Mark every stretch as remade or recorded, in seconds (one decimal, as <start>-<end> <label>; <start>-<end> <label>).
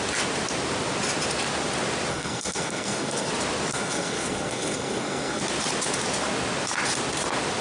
0.0-2.1 recorded; 2.1-3.3 remade; 3.3-3.7 recorded; 3.7-5.4 remade; 5.4-7.6 recorded